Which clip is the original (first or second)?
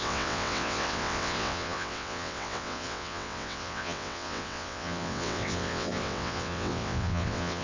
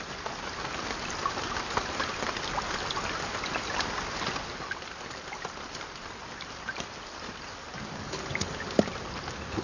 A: second